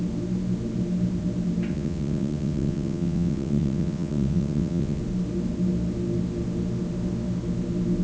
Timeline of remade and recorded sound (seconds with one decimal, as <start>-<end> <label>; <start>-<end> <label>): 0.0-1.7 recorded; 1.7-5.0 remade; 5.0-8.0 recorded